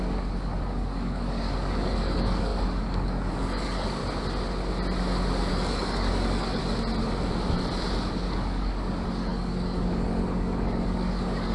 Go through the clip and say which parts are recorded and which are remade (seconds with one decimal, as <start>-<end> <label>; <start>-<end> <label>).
0.0-4.0 remade; 4.0-5.5 recorded; 5.5-6.6 remade; 6.6-8.1 recorded; 8.1-11.5 remade

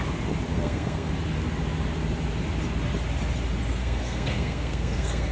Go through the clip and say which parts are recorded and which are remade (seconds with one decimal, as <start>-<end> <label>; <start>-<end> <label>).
0.0-0.5 recorded; 0.5-1.1 remade; 1.1-3.8 recorded; 3.8-5.3 remade